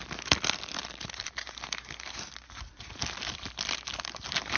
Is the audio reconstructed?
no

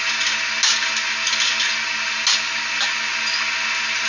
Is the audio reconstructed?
no